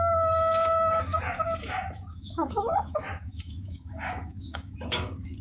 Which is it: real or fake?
fake